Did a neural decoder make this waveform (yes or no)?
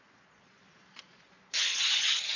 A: yes